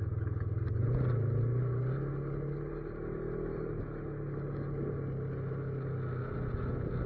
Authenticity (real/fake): real